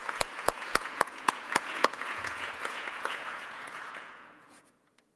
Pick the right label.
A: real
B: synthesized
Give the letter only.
B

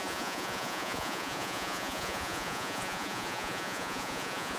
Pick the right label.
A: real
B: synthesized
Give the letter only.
B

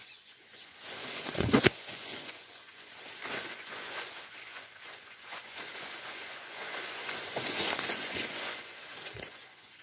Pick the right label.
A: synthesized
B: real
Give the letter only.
A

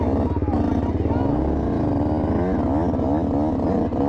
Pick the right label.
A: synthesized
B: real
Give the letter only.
B